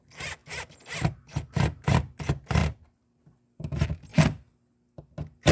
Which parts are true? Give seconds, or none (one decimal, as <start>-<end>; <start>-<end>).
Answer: 0.0-2.6; 3.2-5.5